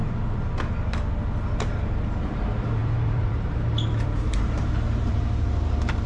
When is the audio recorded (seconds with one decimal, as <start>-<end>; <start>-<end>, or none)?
0.0-1.6